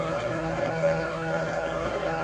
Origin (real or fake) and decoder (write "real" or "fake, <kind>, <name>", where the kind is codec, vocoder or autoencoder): fake, codec, SNAC